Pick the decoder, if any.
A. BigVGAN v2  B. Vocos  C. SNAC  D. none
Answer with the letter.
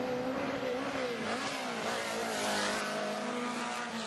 D